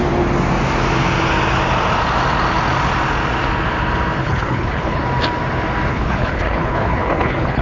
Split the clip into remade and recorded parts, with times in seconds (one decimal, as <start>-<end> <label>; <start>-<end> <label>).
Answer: 0.0-4.2 recorded; 4.2-5.0 remade; 5.0-5.9 recorded; 5.9-7.6 remade